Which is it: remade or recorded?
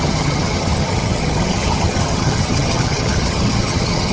remade